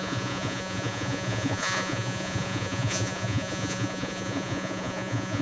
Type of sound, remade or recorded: remade